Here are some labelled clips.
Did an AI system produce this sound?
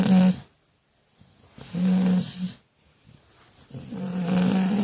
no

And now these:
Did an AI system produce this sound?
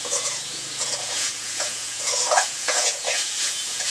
yes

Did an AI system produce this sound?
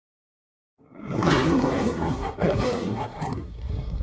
yes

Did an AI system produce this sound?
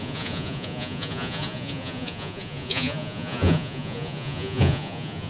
yes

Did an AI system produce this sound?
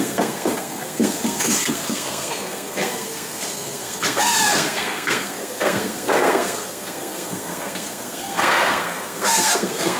yes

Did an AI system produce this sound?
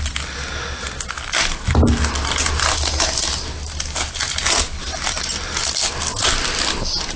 no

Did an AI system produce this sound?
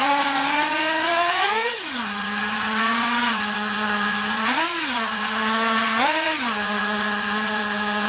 yes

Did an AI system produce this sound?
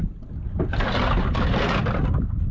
no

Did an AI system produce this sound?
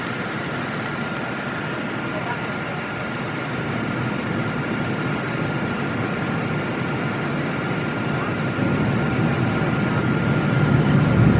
no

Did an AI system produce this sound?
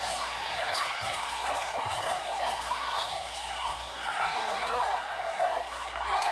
yes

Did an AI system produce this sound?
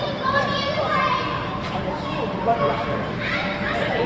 no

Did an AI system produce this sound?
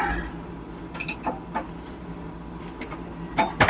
yes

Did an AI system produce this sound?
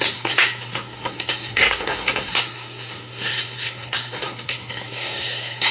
yes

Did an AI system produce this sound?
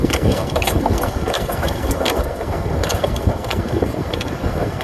yes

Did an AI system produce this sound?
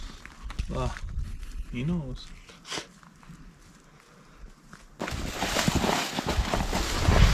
no